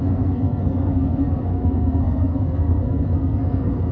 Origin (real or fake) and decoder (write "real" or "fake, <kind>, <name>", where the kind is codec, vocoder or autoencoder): fake, codec, SNAC